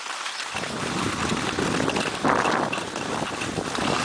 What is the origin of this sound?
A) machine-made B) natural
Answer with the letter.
B